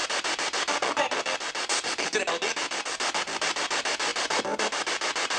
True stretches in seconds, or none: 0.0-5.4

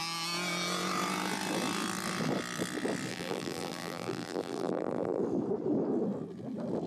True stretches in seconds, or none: 0.0-3.1; 5.2-6.9

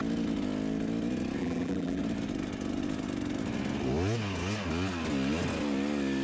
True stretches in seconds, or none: 0.0-1.4; 2.0-6.2

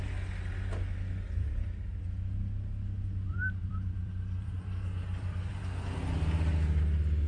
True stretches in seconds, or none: 0.0-3.3; 6.0-7.3